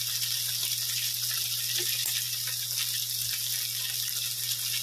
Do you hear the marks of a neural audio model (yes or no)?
no